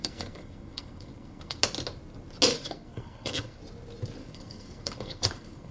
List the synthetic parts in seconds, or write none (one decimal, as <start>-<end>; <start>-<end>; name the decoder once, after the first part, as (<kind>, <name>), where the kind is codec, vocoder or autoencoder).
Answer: 0.0-1.6 (codec, SNAC); 2.5-3.6; 4.2-5.7